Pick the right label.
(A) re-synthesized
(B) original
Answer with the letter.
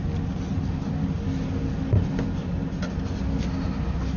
B